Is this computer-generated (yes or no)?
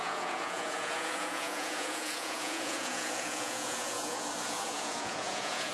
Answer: yes